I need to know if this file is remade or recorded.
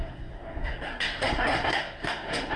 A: remade